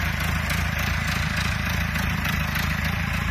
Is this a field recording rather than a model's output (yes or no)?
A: no